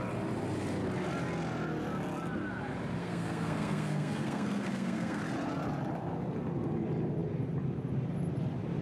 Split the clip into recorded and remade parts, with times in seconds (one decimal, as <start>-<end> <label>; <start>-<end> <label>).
0.0-3.0 recorded; 3.0-5.2 remade; 5.2-8.8 recorded